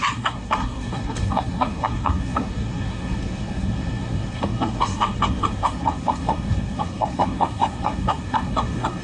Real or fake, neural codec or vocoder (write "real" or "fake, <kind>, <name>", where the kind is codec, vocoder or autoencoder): fake, codec, SNAC